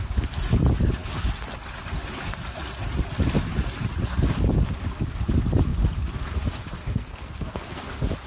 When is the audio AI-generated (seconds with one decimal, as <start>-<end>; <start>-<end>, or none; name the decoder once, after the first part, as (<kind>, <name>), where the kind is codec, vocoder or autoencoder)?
6.8-7.8 (codec, SNAC)